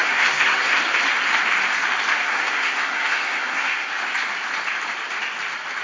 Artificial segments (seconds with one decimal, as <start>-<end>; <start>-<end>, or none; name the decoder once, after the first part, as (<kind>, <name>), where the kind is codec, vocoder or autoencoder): 0.0-0.8 (codec, SNAC); 2.1-3.9